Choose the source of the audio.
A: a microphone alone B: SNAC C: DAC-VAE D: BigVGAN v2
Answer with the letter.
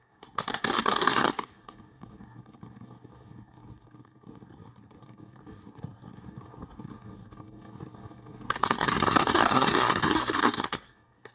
B